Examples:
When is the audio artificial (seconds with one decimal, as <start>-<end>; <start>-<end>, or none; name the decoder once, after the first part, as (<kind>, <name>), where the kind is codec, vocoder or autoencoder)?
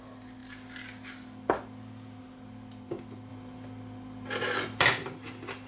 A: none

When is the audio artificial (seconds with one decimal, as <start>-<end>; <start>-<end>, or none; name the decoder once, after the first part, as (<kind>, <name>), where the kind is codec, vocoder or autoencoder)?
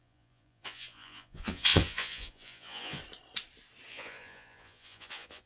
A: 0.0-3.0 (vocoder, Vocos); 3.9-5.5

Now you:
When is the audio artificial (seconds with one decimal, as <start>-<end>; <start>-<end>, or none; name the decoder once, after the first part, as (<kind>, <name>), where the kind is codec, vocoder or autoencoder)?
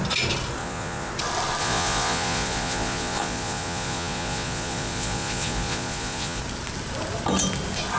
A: 0.6-1.1 (vocoder, Vocos); 1.6-6.4